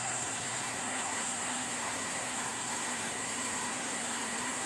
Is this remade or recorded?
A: remade